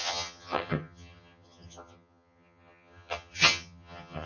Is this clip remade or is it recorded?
remade